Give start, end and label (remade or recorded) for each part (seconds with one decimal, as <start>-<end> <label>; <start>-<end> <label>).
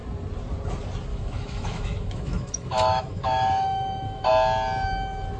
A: 0.0-1.1 recorded; 1.1-4.3 remade; 4.3-5.4 recorded